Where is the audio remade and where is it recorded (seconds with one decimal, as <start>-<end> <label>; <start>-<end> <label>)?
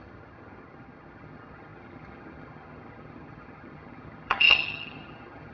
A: 0.0-5.5 remade